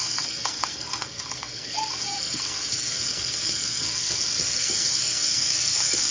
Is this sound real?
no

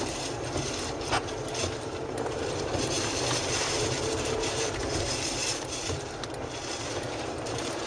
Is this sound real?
no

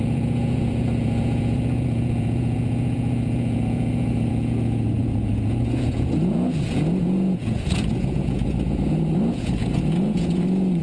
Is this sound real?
no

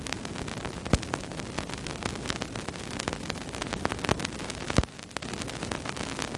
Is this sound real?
yes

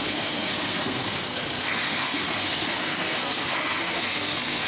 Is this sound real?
no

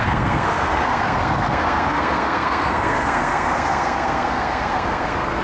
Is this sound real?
no